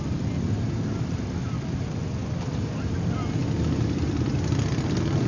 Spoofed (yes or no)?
no